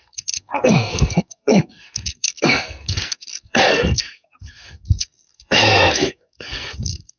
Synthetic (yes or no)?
yes